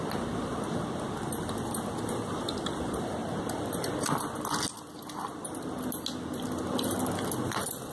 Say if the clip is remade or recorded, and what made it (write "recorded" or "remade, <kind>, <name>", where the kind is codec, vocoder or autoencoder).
recorded